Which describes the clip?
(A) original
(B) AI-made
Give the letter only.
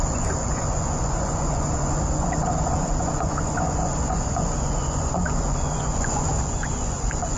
B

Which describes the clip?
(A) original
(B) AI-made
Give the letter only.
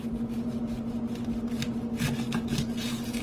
A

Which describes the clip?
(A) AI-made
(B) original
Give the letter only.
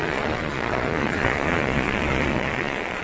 A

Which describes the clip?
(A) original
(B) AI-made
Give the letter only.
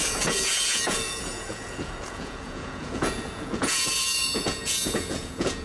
B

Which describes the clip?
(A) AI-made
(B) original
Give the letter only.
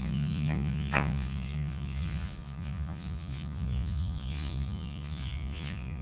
A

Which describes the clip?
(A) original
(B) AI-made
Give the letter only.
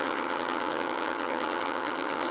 B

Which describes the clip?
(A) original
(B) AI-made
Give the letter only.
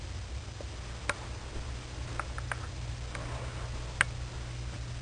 A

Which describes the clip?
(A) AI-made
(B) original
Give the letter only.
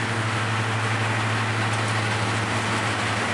B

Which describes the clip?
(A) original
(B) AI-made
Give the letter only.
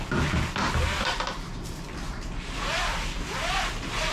A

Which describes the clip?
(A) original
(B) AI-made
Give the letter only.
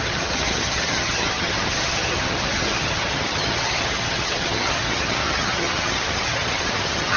B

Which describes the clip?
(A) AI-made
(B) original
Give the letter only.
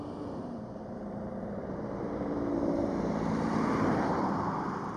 A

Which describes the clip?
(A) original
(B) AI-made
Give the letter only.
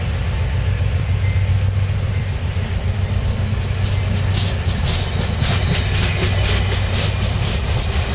A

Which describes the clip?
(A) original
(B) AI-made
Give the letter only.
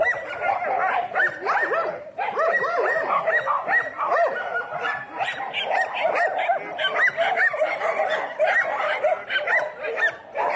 A